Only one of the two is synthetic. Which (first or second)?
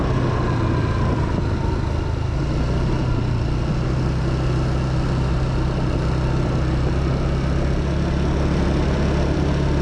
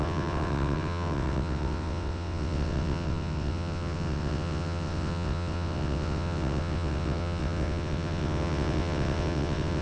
second